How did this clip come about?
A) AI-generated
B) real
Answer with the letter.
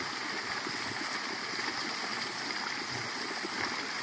B